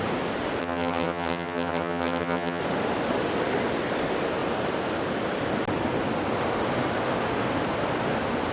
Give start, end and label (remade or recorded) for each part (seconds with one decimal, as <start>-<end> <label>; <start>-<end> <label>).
0.0-0.6 recorded; 0.6-2.6 remade; 2.6-8.5 recorded